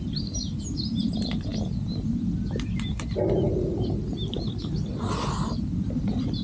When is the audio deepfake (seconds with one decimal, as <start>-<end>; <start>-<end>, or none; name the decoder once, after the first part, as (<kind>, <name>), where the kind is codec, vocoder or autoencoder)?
0.0-1.5 (vocoder, BigVGAN v2); 5.1-6.4